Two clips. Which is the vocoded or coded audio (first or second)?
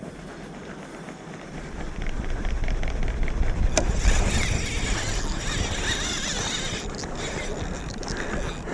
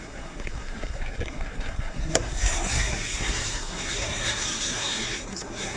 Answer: second